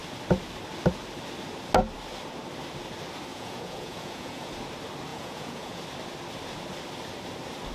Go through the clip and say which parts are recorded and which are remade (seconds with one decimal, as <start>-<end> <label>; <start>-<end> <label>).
0.0-3.3 recorded; 3.3-4.5 remade; 4.5-5.1 recorded; 5.1-5.8 remade; 5.8-7.7 recorded